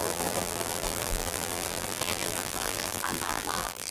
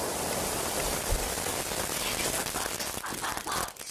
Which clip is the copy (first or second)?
first